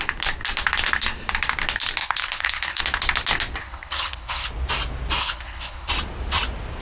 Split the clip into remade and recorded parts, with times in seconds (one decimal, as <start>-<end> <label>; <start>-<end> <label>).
0.0-2.0 recorded; 2.0-2.8 remade; 2.8-3.6 recorded; 3.6-4.5 remade; 4.5-5.2 recorded; 5.2-5.9 remade; 5.9-6.8 recorded